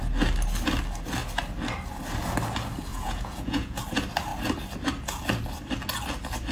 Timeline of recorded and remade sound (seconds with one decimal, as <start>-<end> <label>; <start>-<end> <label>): 0.0-2.9 recorded; 2.9-3.8 remade; 3.8-6.5 recorded